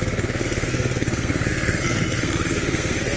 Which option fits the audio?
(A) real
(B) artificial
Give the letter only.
B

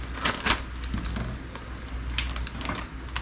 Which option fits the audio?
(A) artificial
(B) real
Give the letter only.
B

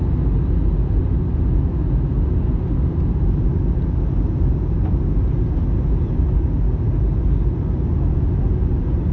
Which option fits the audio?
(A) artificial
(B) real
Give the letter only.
B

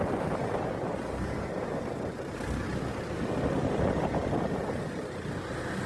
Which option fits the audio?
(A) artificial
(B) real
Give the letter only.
B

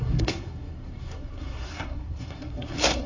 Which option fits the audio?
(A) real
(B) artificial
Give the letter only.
B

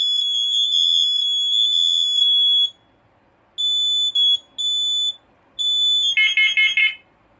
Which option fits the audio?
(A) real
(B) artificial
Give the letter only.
A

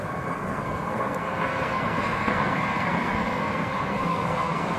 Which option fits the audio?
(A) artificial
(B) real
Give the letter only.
A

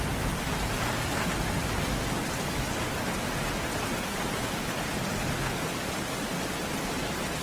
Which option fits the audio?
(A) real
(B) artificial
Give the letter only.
A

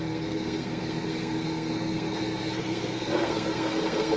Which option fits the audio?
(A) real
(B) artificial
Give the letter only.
B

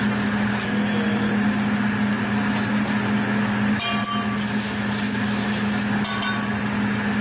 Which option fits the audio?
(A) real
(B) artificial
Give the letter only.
A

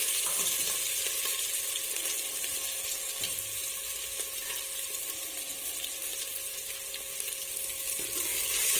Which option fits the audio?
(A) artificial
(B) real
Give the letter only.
B